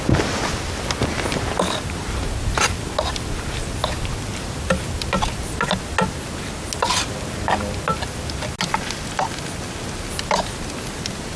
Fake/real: real